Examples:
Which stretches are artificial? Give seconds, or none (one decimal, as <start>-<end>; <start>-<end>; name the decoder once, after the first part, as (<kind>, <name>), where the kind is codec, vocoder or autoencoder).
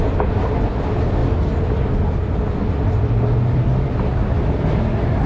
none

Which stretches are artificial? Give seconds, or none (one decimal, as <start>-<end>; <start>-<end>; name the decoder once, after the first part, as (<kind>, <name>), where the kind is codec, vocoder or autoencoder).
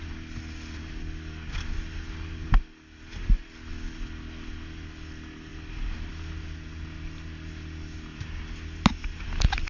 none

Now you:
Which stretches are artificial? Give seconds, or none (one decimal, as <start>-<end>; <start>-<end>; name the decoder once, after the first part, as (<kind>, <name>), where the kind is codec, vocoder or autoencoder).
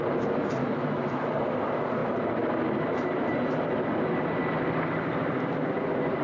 0.6-1.4 (autoencoder, DAC-VAE)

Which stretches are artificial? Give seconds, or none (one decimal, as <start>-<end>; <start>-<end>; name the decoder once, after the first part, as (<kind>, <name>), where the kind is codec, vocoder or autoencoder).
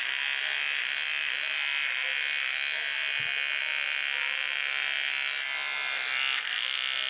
none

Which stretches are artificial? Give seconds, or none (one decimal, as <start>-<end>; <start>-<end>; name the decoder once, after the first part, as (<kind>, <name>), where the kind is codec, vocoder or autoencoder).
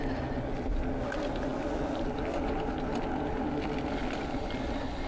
none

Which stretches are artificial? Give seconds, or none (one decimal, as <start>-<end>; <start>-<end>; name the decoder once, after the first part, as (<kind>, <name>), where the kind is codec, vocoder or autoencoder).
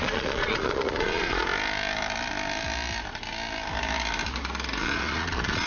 0.0-1.4 (vocoder, Vocos); 4.8-5.7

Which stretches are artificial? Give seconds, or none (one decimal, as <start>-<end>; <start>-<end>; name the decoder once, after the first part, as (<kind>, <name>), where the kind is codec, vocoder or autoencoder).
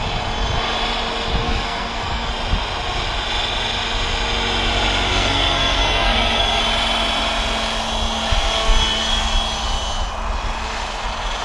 1.4-2.3 (codec, SNAC); 5.1-6.6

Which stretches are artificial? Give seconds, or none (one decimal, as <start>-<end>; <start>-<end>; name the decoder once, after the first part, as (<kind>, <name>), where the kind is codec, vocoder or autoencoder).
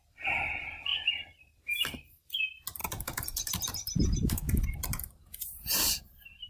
0.9-1.7 (vocoder, BigVGAN v2); 2.8-6.0